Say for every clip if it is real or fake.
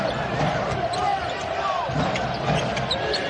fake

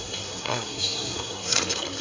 fake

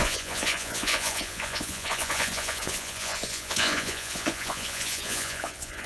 fake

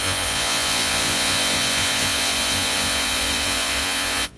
fake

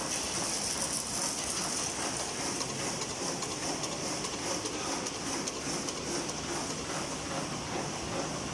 real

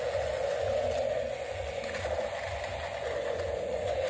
fake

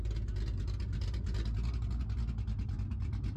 real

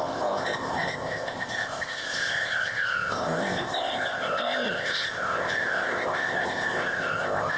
fake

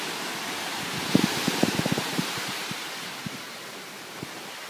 fake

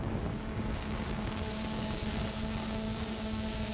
fake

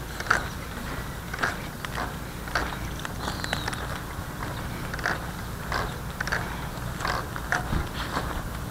real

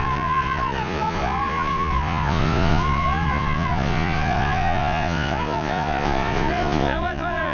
fake